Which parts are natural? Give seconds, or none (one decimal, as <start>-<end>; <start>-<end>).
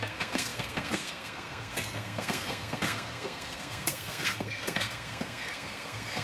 none